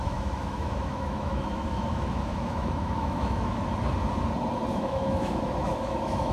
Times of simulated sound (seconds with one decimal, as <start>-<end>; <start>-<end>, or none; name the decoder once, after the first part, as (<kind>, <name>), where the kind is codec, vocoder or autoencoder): 0.0-3.6 (autoencoder, DAC-VAE); 4.7-6.3